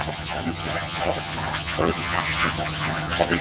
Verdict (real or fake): fake